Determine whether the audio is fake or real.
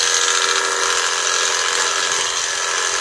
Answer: real